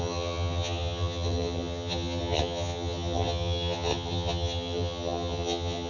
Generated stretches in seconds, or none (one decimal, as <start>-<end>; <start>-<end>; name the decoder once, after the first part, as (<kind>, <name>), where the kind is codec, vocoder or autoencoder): 0.0-5.9 (vocoder, HiFi-GAN)

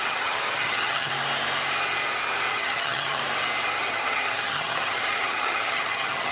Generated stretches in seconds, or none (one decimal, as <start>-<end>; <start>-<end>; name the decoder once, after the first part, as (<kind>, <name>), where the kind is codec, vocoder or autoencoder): 0.0-1.1 (vocoder, HiFi-GAN); 2.5-3.2; 3.8-6.3